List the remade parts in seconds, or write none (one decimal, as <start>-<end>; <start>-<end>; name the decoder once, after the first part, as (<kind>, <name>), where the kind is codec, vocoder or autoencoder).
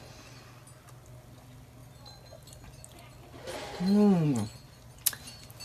none